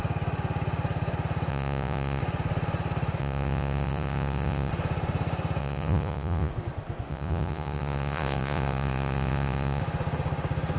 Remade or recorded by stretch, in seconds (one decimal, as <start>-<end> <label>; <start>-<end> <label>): 0.0-1.5 recorded; 1.5-2.2 remade; 2.2-3.2 recorded; 3.2-4.7 remade; 4.7-5.6 recorded; 5.6-6.5 remade; 6.5-7.1 recorded; 7.1-9.8 remade; 9.8-10.8 recorded